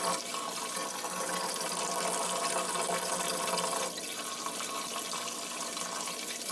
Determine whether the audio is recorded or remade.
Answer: recorded